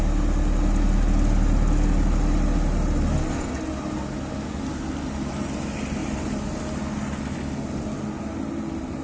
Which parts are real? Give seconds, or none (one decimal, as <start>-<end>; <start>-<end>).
0.0-9.0